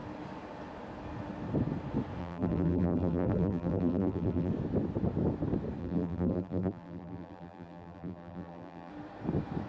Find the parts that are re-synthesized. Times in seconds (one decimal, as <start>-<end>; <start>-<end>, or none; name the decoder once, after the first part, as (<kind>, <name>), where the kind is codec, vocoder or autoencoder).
2.2-4.5 (vocoder, BigVGAN v2); 5.8-8.9